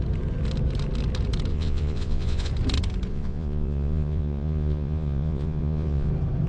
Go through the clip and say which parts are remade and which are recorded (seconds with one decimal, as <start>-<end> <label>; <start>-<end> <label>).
0.0-1.5 recorded; 1.5-2.5 remade; 2.5-3.1 recorded; 3.1-6.1 remade; 6.1-6.5 recorded